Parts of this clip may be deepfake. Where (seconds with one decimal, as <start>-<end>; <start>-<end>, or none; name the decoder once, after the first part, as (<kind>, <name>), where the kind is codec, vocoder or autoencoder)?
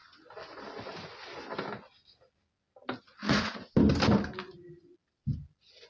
3.2-3.7 (vocoder, Vocos)